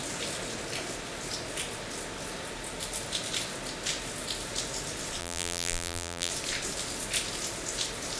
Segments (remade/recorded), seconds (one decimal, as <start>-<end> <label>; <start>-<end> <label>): 0.0-5.2 recorded; 5.2-6.3 remade; 6.3-8.2 recorded

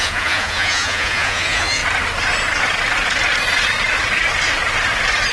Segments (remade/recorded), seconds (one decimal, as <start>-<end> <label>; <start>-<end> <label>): 0.0-1.8 remade; 1.8-5.3 recorded